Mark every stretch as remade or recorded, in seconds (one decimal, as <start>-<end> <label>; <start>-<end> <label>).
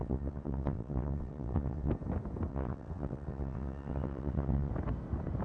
0.0-1.9 remade; 1.9-2.5 recorded; 2.5-4.7 remade; 4.7-5.4 recorded